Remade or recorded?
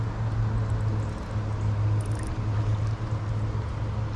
recorded